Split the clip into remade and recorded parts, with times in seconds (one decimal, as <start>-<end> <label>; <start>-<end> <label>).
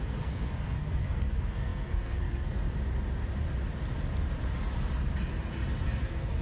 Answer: 0.0-2.6 remade; 2.6-6.0 recorded; 6.0-6.4 remade